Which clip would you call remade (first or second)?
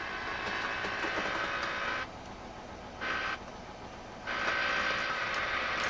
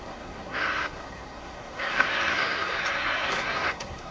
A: second